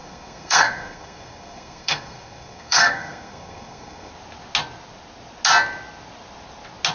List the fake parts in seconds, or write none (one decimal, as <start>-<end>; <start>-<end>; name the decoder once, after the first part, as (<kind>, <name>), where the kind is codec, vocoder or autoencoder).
0.0-4.1 (codec, SNAC)